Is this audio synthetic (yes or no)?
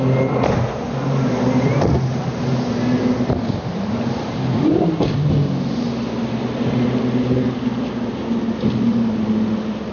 no